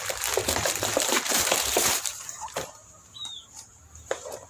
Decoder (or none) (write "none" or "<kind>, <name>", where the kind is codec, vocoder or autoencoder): vocoder, BigVGAN v2